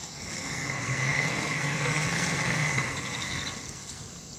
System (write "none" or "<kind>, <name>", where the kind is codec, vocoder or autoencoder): codec, SNAC